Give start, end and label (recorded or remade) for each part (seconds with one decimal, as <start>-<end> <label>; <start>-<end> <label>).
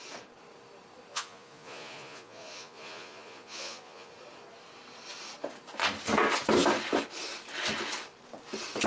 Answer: 0.0-1.1 recorded; 1.1-4.1 remade; 4.1-8.9 recorded